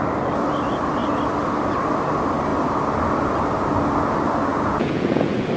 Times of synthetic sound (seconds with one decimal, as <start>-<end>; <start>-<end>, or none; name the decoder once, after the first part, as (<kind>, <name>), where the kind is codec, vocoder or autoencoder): 4.5-5.6 (vocoder, Vocos)